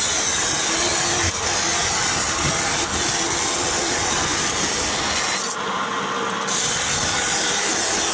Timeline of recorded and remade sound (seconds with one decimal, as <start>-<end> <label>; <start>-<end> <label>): 0.0-8.1 recorded